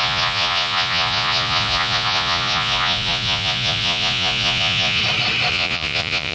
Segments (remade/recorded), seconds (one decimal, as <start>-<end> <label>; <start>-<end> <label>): 0.0-5.0 remade; 5.0-5.5 recorded; 5.5-6.3 remade